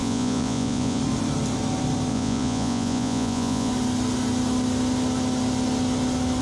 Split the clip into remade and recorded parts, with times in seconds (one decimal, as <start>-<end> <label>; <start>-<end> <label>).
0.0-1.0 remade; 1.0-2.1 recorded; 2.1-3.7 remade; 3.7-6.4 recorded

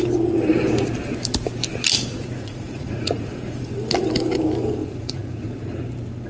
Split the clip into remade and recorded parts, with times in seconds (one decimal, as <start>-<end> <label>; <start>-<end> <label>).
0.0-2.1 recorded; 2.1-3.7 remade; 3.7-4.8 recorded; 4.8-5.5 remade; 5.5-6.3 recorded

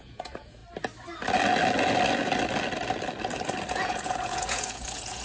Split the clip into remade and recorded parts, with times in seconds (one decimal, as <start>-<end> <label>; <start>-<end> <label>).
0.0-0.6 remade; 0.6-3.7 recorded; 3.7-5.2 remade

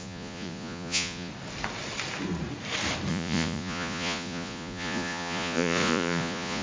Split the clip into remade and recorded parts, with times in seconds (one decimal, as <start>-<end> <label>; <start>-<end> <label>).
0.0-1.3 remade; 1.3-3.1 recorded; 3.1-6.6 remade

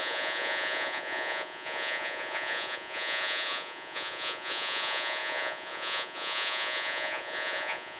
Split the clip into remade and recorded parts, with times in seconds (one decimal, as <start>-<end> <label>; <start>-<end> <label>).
0.0-8.0 remade

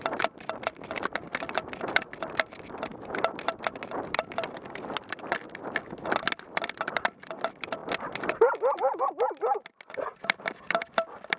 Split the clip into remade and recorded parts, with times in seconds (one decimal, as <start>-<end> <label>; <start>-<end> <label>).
0.0-11.4 recorded

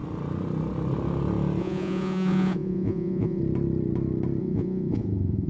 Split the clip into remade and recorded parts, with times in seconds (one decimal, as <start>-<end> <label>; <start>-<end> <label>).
0.0-1.6 recorded; 1.6-3.4 remade; 3.4-4.4 recorded; 4.4-5.5 remade